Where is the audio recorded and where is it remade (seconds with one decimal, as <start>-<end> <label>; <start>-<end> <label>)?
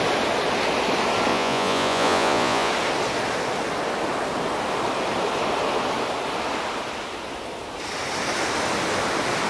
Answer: 0.0-1.3 recorded; 1.3-2.7 remade; 2.7-9.5 recorded